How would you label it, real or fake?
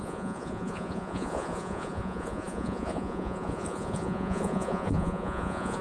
fake